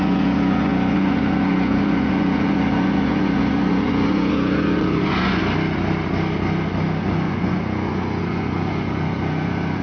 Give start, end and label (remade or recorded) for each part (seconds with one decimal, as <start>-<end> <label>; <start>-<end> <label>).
0.0-5.4 remade; 5.4-7.0 recorded; 7.0-9.8 remade